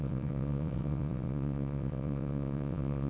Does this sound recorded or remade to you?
remade